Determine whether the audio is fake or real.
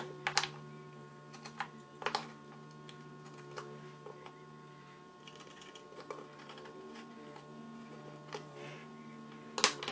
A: real